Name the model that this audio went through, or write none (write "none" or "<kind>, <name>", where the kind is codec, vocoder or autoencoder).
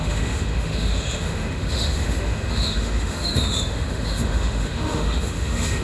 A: autoencoder, DAC-VAE